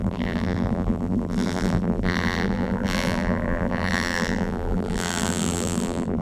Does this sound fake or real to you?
fake